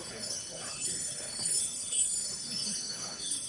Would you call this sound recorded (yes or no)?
no